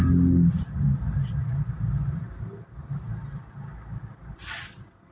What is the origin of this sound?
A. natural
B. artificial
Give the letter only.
A